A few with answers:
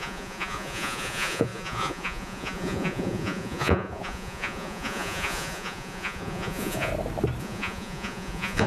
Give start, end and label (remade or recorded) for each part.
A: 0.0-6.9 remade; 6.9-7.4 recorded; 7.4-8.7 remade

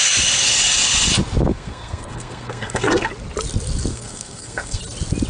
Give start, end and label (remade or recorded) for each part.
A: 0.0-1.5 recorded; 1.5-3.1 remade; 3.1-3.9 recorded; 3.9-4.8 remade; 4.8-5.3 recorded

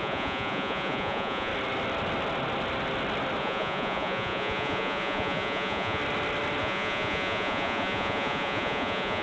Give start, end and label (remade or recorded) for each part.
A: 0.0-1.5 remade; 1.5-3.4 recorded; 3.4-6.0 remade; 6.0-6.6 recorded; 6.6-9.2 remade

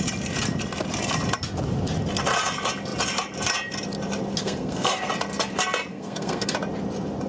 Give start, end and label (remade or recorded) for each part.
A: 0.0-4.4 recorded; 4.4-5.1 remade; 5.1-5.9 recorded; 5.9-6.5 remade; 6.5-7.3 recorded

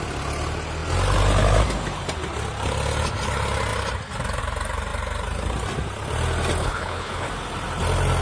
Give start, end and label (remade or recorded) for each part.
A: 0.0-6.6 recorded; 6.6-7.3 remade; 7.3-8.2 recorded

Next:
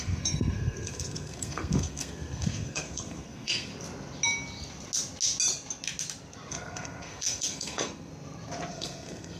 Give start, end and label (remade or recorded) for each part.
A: 0.0-3.7 remade; 3.7-6.5 recorded; 6.5-8.1 remade; 8.1-8.7 recorded; 8.7-9.4 remade